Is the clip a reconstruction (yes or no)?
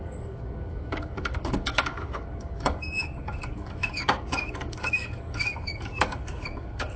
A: yes